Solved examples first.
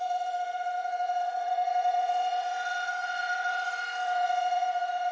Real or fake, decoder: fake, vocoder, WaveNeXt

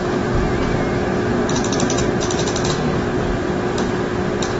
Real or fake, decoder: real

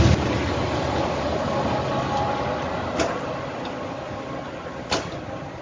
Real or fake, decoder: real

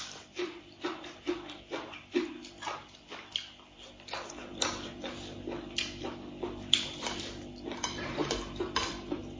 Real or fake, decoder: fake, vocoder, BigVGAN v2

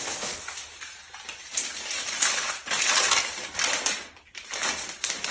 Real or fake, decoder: real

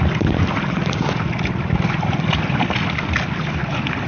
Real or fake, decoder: real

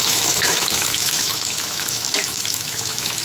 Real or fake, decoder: fake, autoencoder, DAC-VAE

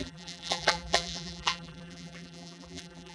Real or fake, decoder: fake, vocoder, BigVGAN v2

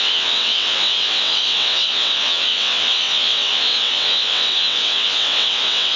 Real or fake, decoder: fake, vocoder, WaveNeXt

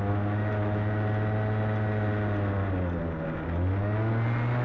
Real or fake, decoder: real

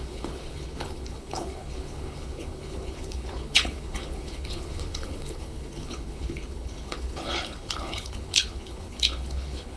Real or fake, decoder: fake, codec, HILCodec